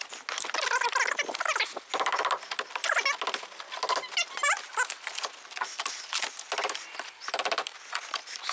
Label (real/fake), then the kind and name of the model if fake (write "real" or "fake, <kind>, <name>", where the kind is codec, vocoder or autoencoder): real